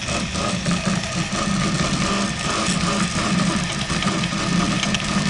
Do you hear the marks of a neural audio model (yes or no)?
no